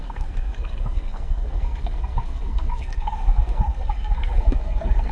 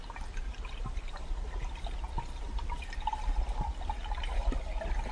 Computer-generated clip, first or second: first